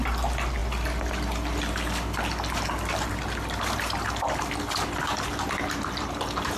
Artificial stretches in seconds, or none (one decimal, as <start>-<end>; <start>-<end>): none